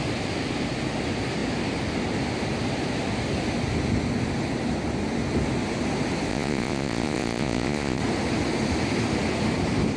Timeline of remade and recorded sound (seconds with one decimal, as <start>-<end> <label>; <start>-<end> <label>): 0.0-6.3 recorded; 6.3-8.0 remade; 8.0-10.0 recorded